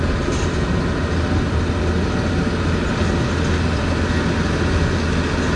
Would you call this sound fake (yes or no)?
no